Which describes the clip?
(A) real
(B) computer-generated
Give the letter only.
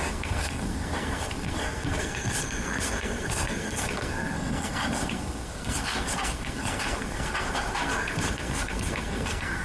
B